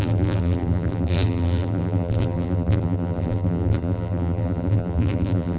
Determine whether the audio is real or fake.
fake